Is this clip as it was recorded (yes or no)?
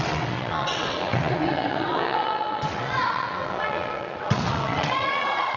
no